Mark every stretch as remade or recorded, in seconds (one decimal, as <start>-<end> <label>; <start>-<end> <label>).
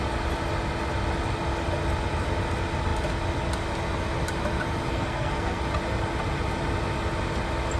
0.0-4.9 recorded; 4.9-5.6 remade; 5.6-7.8 recorded